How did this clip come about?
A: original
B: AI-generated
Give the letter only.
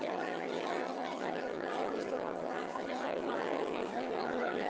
B